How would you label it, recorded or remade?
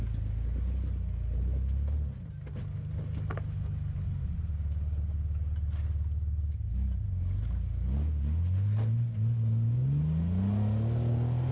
recorded